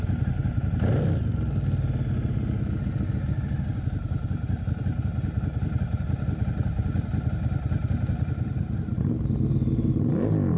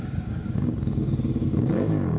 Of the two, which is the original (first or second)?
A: first